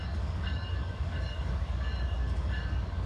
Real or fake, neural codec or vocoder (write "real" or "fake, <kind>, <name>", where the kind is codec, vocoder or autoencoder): fake, codec, DAC